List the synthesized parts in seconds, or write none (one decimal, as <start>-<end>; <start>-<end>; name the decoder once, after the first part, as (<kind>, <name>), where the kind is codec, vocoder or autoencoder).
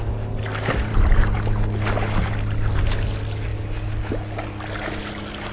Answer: none